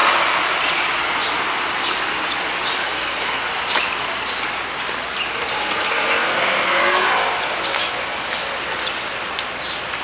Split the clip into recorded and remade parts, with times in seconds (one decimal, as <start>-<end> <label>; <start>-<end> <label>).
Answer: 0.0-2.8 recorded; 2.8-3.4 remade; 3.4-5.6 recorded; 5.6-6.8 remade; 6.8-10.0 recorded